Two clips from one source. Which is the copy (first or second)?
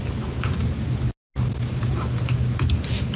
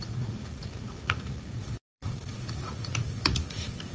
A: second